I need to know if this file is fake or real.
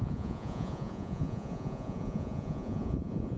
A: fake